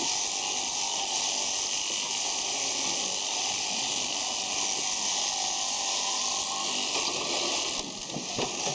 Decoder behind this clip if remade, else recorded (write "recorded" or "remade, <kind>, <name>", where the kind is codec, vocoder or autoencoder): remade, vocoder, BigVGAN v2